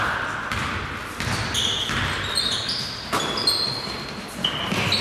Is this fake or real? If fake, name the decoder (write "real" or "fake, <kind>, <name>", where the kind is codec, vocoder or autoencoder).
real